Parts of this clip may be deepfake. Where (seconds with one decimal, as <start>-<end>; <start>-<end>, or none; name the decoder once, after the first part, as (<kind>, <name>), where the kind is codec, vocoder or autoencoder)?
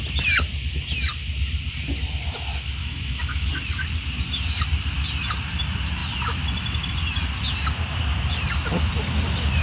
2.8-3.5 (autoencoder, DAC-VAE)